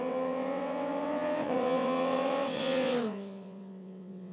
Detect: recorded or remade remade